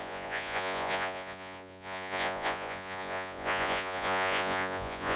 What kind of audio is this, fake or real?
fake